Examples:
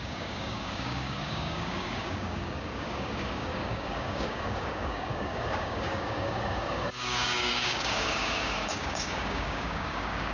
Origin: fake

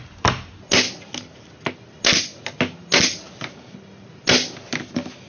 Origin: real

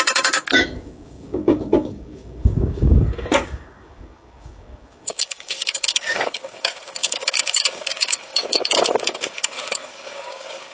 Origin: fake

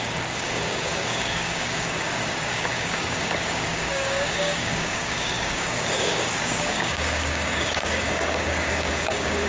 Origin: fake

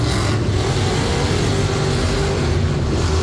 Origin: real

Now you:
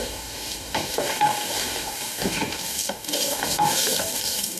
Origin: fake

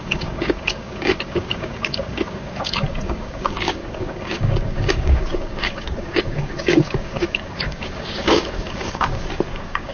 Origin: fake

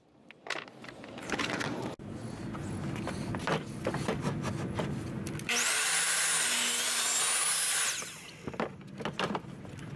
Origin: real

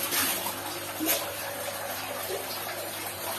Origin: real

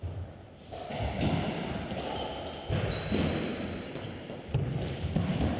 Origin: real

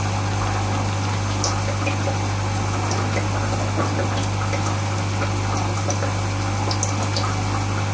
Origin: real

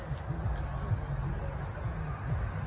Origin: real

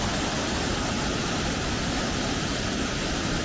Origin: real